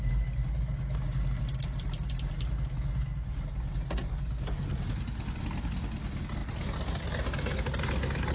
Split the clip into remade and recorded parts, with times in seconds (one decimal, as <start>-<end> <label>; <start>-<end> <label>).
0.0-8.3 recorded